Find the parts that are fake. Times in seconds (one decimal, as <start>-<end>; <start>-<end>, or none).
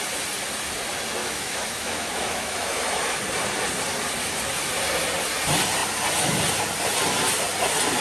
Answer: 1.2-3.2